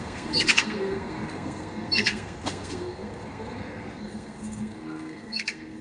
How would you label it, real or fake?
fake